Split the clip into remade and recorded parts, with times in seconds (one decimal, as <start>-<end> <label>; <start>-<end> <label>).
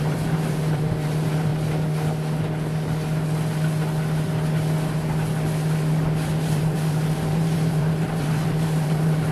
0.0-1.5 remade; 1.5-6.4 recorded; 6.4-9.3 remade